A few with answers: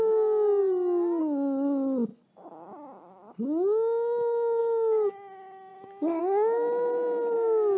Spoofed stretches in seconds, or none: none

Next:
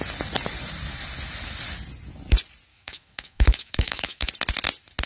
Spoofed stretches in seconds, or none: 2.7-4.3 (autoencoder, DAC-VAE)

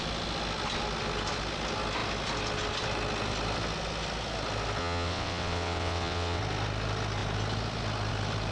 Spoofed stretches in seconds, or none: 4.8-6.4 (vocoder, WaveNeXt)